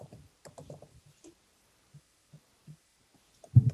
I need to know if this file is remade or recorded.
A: remade